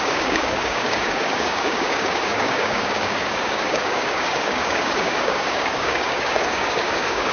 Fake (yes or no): yes